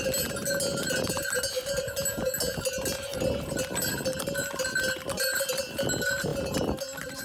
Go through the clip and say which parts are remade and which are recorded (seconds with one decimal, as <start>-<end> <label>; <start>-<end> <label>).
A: 0.0-7.2 recorded